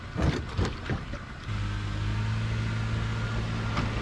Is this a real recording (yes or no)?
yes